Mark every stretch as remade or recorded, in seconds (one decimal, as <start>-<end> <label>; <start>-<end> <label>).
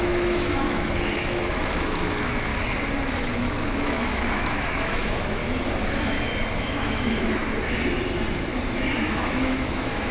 0.0-2.5 remade; 2.5-3.2 recorded; 3.2-5.4 remade; 5.4-6.6 recorded; 6.6-7.4 remade; 7.4-9.0 recorded; 9.0-10.1 remade